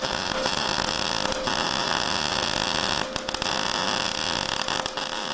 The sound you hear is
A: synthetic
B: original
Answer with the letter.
B